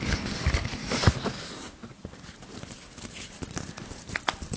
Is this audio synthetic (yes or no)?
no